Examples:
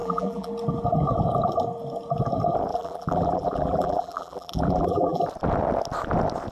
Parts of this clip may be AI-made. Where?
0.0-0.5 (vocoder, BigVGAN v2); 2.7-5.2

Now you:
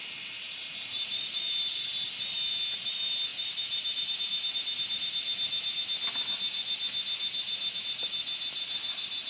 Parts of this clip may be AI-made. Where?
0.0-2.4 (vocoder, BigVGAN v2)

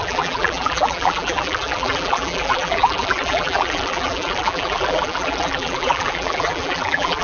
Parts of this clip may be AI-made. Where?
0.0-7.2 (vocoder, BigVGAN v2)

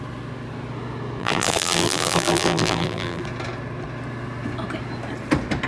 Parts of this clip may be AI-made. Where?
1.2-3.2 (vocoder, BigVGAN v2)

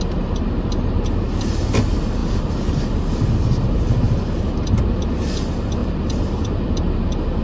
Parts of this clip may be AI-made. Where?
2.2-3.2 (vocoder, BigVGAN v2); 5.8-6.7